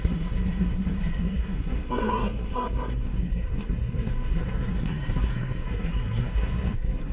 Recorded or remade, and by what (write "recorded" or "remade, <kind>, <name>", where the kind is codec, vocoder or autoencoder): remade, codec, SNAC